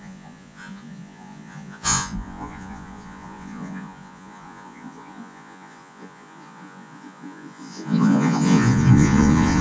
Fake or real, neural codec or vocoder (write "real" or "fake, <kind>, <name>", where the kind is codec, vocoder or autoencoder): fake, vocoder, Vocos